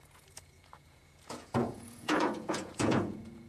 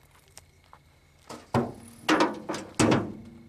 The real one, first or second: second